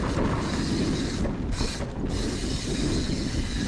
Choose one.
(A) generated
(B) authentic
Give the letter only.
B